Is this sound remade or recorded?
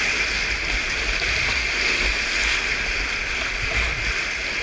recorded